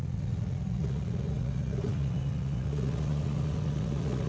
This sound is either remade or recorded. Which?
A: remade